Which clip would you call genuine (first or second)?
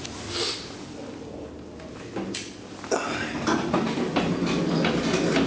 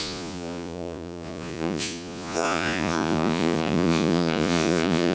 first